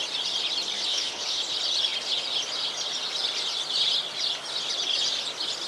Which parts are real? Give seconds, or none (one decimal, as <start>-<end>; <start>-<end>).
0.0-0.9; 1.4-5.7